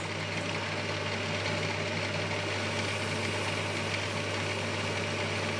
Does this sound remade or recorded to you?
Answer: recorded